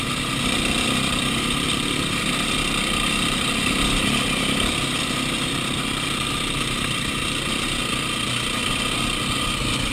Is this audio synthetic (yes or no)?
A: no